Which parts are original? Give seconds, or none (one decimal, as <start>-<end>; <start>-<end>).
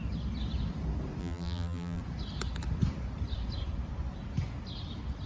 0.0-1.2; 2.0-5.3